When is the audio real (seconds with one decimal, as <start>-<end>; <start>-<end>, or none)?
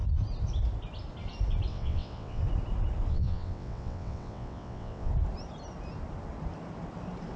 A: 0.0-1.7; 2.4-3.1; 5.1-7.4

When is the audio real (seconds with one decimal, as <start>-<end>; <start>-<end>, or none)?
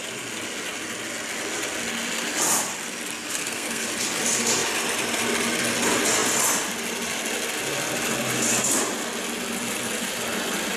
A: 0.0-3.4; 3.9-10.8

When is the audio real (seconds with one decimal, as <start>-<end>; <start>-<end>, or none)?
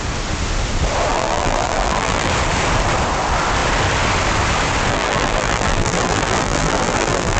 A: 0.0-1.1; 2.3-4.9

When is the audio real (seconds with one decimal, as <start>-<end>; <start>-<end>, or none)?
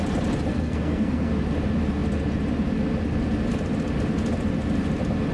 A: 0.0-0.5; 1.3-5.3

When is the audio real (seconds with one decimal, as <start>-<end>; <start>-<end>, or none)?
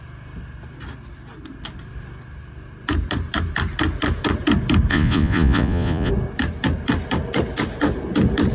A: 0.0-4.9; 6.1-8.5